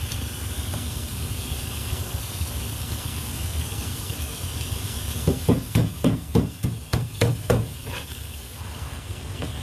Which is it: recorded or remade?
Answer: remade